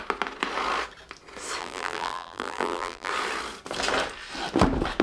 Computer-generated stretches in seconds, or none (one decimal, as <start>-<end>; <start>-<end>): 1.6-3.1

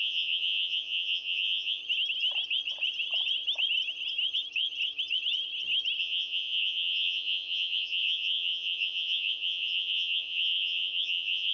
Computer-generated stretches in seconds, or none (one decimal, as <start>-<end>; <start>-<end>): 0.0-1.8; 6.0-11.5

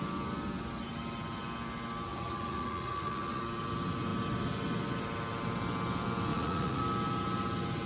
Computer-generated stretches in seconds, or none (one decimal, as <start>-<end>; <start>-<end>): 2.1-3.4; 6.3-6.8

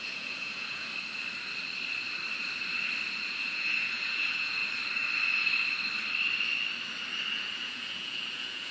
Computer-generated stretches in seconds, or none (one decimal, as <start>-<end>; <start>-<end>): 0.0-0.9; 3.3-4.6; 7.3-8.7

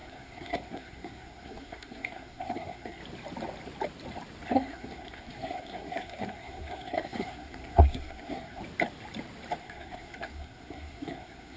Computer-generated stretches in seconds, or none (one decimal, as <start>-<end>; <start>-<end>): 0.0-3.0; 4.5-8.6; 9.6-11.6

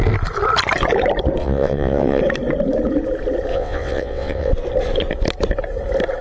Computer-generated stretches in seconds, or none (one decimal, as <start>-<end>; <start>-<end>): 1.4-2.2; 3.5-4.5

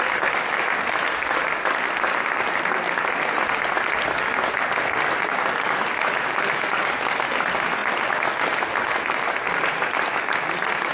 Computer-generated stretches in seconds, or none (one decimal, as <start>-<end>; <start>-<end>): none

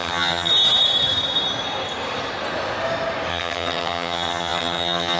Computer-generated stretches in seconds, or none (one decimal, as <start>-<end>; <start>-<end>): 0.0-0.5; 3.3-5.2